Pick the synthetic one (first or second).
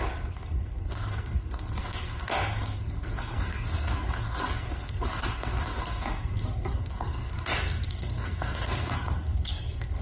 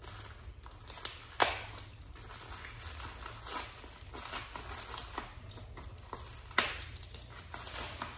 first